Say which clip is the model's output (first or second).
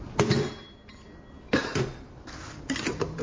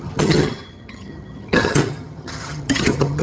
second